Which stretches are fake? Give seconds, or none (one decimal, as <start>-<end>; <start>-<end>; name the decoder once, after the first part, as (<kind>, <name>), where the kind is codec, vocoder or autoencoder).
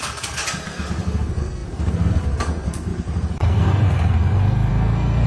0.0-5.3 (codec, SNAC)